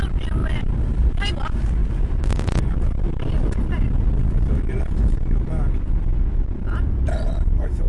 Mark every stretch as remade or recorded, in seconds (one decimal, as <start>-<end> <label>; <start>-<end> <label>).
0.0-0.4 recorded; 0.4-1.3 remade; 1.3-1.8 recorded; 1.8-2.4 remade; 2.4-7.9 recorded